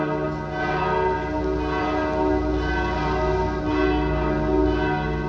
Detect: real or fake real